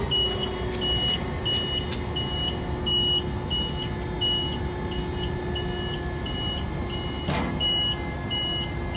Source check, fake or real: real